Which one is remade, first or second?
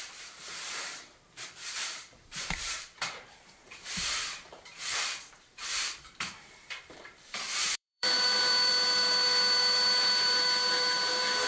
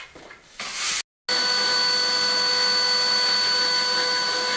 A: first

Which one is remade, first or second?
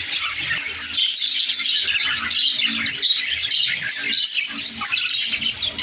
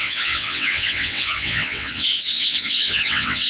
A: second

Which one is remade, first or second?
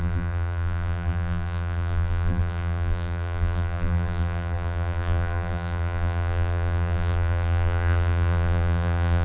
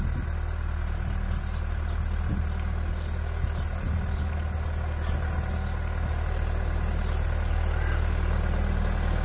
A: first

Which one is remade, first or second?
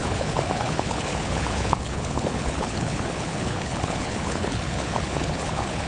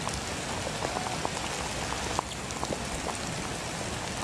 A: first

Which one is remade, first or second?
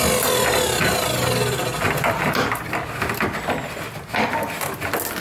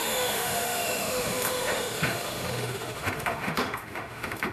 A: second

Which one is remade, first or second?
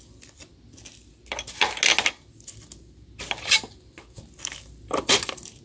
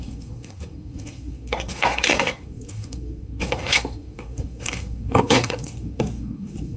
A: second